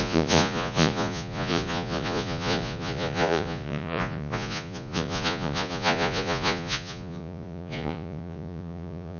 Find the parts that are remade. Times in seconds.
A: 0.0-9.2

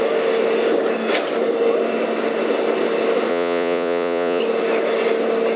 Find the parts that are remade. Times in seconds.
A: 3.3-4.4

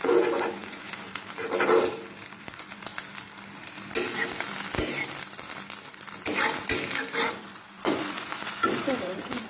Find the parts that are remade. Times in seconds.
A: 0.0-1.1; 2.3-2.9; 7.3-9.5

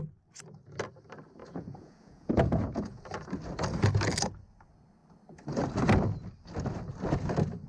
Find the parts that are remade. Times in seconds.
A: 1.4-3.0

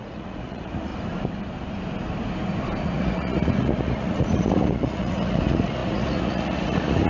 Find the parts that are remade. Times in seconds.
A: 0.0-0.9; 2.8-7.1